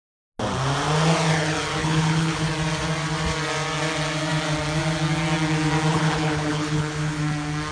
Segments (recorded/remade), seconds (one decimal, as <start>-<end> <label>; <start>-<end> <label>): 0.0-1.8 recorded; 1.8-2.5 remade; 2.5-5.9 recorded; 5.9-7.2 remade; 7.2-7.7 recorded